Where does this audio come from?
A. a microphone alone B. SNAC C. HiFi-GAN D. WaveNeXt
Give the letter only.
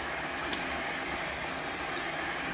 A